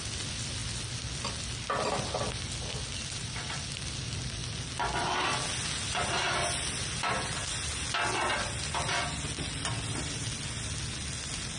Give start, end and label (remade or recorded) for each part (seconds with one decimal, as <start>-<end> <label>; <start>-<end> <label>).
0.0-11.6 recorded

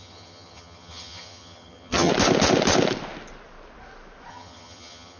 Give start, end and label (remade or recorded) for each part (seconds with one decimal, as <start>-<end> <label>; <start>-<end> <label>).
0.0-2.1 remade; 2.1-4.3 recorded; 4.3-5.2 remade